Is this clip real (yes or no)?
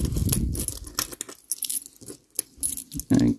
yes